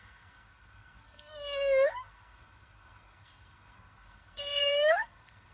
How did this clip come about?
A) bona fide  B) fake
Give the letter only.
B